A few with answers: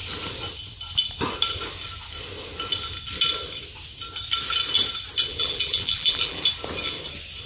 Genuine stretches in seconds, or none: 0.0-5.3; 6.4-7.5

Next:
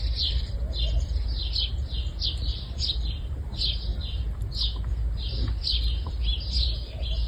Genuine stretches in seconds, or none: 0.0-6.3